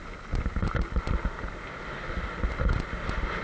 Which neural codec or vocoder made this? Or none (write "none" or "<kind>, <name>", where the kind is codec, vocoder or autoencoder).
none